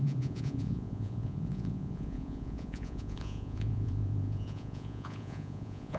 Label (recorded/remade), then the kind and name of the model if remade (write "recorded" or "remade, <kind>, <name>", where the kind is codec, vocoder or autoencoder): remade, vocoder, Vocos